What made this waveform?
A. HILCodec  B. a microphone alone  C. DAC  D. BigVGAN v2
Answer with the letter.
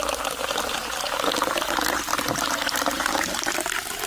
B